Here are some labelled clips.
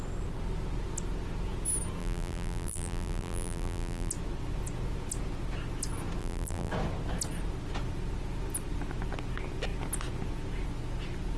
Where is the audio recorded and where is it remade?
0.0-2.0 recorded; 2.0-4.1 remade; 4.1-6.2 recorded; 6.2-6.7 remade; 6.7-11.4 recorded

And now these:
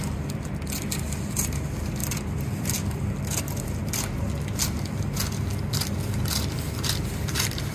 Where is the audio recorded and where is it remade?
0.0-2.0 recorded; 2.0-3.4 remade; 3.4-5.5 recorded; 5.5-6.5 remade; 6.5-7.7 recorded

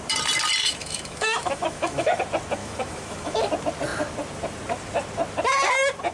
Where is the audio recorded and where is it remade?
0.0-0.6 recorded; 0.6-2.2 remade; 2.2-2.6 recorded; 2.6-3.5 remade; 3.5-6.1 recorded

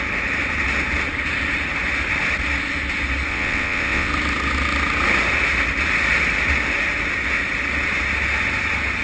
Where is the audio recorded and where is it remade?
0.0-3.3 recorded; 3.3-4.1 remade; 4.1-9.0 recorded

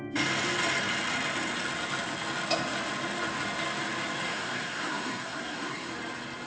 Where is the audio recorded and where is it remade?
0.0-4.3 recorded; 4.3-5.9 remade; 5.9-6.5 recorded

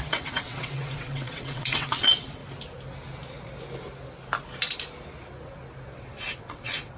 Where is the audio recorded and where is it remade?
0.0-2.4 remade; 2.4-6.0 recorded; 6.0-7.0 remade

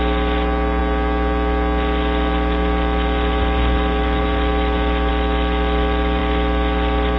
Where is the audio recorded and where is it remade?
0.0-7.2 recorded

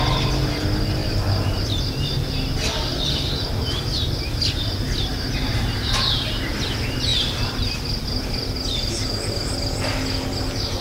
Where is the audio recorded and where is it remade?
0.0-1.0 recorded; 1.0-1.8 remade; 1.8-10.8 recorded